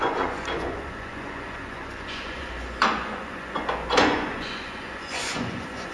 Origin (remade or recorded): remade